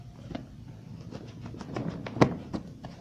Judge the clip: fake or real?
real